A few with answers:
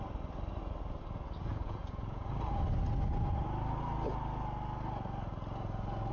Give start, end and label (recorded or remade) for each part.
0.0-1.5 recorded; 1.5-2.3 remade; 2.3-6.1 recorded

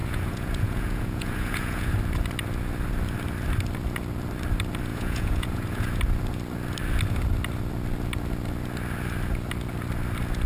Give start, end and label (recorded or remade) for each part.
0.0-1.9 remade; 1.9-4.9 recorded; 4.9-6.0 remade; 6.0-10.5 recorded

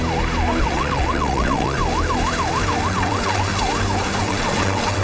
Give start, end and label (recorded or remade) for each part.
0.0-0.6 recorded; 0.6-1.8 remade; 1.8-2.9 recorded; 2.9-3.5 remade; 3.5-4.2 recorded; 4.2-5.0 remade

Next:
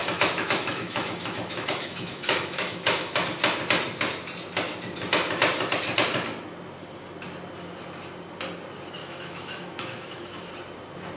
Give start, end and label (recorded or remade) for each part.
0.0-3.1 remade; 3.1-9.0 recorded; 9.0-10.5 remade; 10.5-11.2 recorded

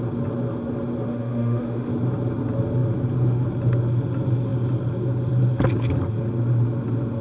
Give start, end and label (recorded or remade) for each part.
0.0-1.1 recorded; 1.1-1.9 remade; 1.9-7.2 recorded

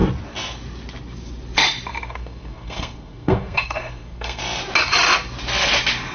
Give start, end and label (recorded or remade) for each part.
0.0-1.9 recorded; 1.9-4.4 remade; 4.4-6.1 recorded

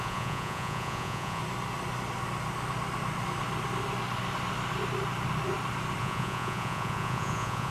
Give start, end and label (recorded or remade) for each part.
0.0-1.4 remade; 1.4-6.0 recorded; 6.0-7.7 remade

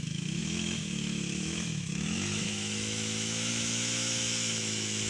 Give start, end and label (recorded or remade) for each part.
0.0-5.1 remade